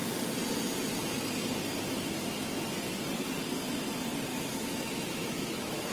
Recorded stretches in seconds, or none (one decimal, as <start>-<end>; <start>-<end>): 0.0-4.3